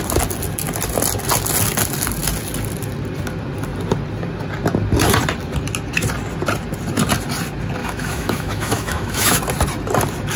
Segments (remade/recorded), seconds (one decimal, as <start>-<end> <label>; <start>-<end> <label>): 0.0-7.8 recorded; 7.8-9.4 remade; 9.4-10.4 recorded